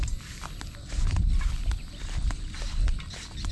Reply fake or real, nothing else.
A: real